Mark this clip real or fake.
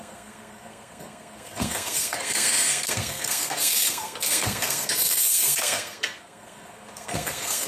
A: fake